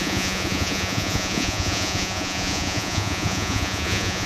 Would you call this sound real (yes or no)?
no